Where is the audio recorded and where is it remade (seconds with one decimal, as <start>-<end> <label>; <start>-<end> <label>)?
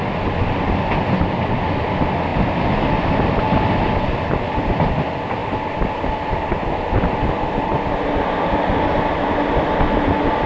0.0-10.5 recorded